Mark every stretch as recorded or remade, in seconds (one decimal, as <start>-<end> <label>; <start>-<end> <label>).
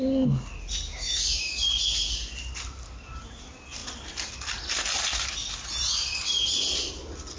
0.0-0.9 recorded; 0.9-1.5 remade; 1.5-7.4 recorded